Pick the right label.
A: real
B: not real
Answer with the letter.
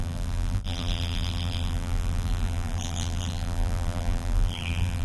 B